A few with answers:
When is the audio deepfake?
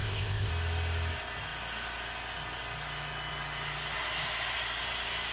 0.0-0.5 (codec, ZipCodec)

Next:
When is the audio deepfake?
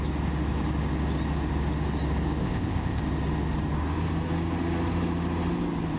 2.4-3.0 (codec, ZipCodec)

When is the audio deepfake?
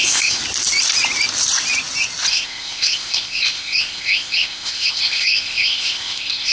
0.0-0.4 (codec, ZipCodec); 2.3-6.5